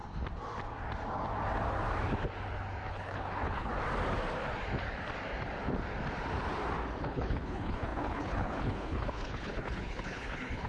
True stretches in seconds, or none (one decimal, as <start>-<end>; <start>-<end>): 0.0-2.9; 3.7-7.0